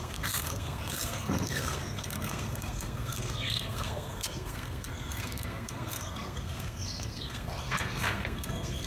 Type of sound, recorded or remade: remade